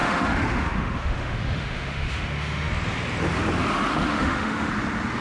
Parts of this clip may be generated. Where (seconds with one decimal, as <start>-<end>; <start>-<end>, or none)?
0.0-2.7; 3.9-4.7